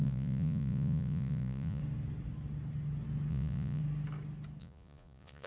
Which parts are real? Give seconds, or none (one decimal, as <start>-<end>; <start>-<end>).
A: 1.8-3.3; 3.8-4.6